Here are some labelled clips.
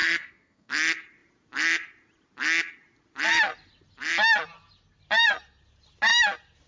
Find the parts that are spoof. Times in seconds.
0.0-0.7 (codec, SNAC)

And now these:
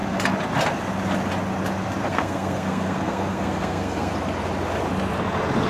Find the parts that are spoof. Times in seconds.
2.0-4.1 (codec, SNAC)

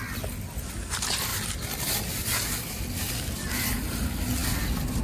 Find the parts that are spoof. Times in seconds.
none

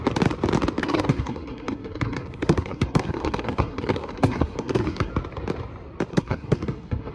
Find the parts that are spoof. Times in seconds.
0.8-5.1 (codec, SNAC); 6.1-7.1

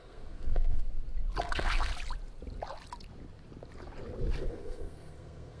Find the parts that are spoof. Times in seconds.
0.0-0.8 (codec, SNAC); 1.4-1.9; 4.5-5.6

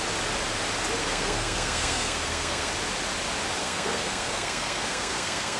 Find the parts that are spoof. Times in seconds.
1.0-2.7 (codec, SNAC); 3.6-5.6

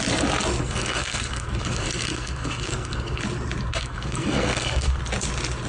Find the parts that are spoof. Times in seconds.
0.6-3.2 (codec, SNAC); 3.7-5.0

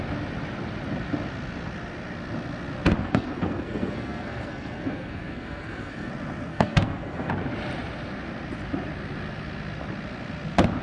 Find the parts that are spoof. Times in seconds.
3.0-6.1 (codec, SNAC); 6.5-7.3